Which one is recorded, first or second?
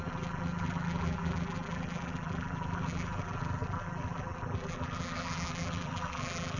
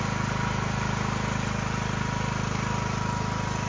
second